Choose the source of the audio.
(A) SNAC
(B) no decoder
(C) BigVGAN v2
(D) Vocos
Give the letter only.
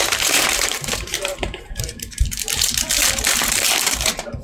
C